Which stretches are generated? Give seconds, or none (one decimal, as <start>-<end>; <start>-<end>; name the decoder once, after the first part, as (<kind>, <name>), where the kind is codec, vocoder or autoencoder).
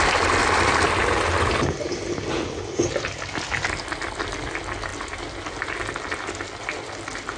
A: 0.4-1.0 (vocoder, BigVGAN v2)